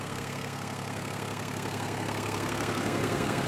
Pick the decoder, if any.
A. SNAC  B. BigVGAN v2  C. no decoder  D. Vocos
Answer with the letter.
A